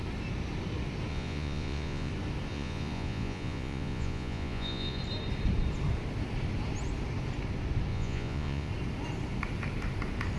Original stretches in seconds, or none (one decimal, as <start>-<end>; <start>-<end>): 0.0-1.1; 2.1-2.5; 5.0-7.9; 8.7-10.4